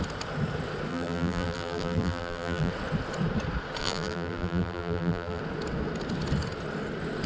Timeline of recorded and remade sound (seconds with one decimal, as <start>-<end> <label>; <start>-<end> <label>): 0.0-0.9 recorded; 0.9-2.7 remade; 2.7-3.8 recorded; 3.8-5.4 remade; 5.4-7.3 recorded